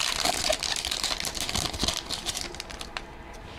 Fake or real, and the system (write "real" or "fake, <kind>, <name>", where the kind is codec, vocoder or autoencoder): real